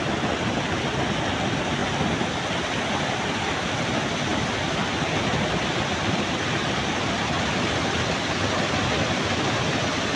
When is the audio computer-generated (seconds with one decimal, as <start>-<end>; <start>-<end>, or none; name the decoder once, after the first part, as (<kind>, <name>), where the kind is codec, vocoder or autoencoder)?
none